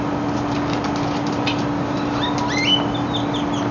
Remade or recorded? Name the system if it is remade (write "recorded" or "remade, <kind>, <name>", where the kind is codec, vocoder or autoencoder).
recorded